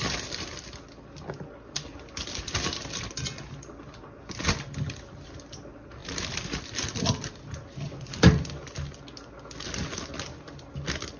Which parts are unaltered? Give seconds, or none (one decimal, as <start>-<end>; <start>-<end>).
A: 0.0-6.0; 6.6-11.2